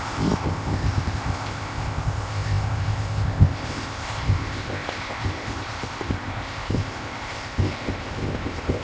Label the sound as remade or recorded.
remade